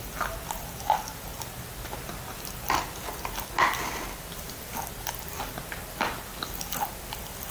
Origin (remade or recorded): recorded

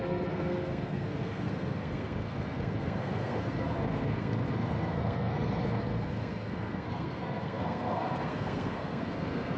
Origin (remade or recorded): remade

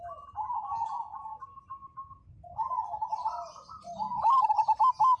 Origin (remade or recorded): recorded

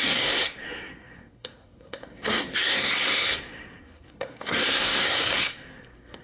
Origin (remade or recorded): remade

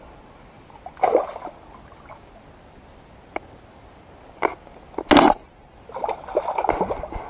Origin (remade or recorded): recorded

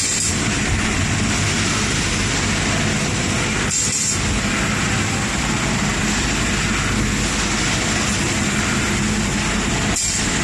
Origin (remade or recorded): recorded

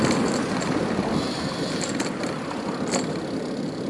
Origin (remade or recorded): recorded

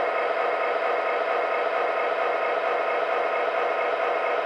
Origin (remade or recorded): recorded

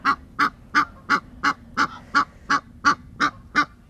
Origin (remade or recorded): recorded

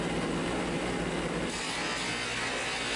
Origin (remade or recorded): recorded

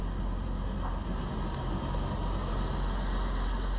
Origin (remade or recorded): recorded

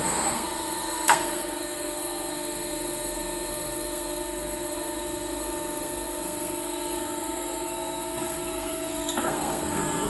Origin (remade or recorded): remade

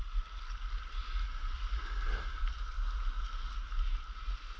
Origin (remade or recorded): recorded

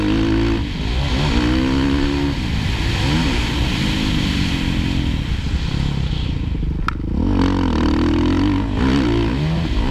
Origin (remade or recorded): recorded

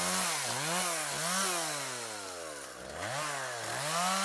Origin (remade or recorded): recorded